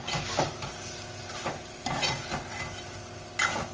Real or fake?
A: real